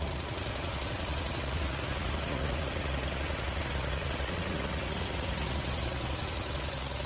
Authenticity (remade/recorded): remade